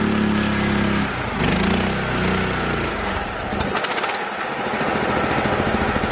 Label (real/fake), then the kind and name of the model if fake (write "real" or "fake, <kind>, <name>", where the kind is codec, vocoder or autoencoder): real